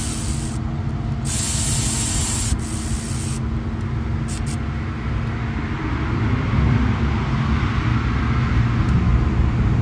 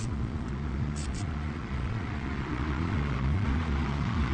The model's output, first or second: second